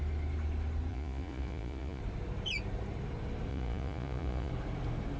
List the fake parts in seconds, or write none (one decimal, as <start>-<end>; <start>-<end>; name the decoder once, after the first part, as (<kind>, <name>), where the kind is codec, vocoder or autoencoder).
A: 0.9-2.0 (vocoder, Vocos); 3.5-4.5